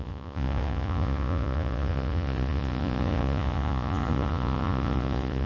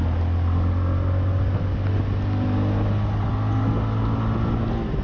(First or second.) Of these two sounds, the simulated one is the first